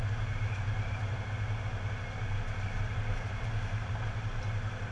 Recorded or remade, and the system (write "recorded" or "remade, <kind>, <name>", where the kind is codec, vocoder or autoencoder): recorded